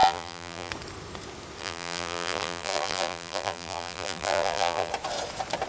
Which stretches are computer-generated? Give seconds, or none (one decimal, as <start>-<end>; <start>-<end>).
0.0-0.7; 1.6-4.9